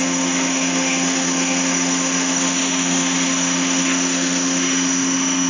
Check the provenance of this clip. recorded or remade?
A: remade